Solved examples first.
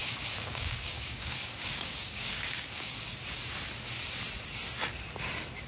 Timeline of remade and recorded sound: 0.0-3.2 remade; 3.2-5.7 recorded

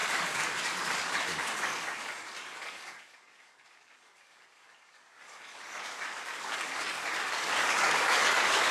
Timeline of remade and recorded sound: 0.0-8.7 remade

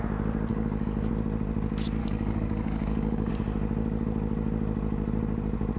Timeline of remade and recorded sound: 0.0-0.5 recorded; 0.5-1.1 remade; 1.1-2.0 recorded; 2.0-3.3 remade; 3.3-5.8 recorded

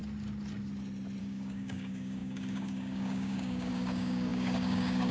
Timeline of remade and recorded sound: 0.0-1.2 recorded; 1.2-5.1 remade